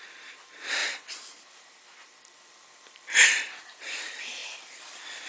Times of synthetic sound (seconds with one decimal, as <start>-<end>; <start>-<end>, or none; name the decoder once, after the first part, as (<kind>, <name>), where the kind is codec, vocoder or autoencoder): 0.8-4.0 (vocoder, BigVGAN v2); 4.4-5.3